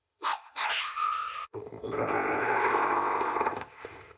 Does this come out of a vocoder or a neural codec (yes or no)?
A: yes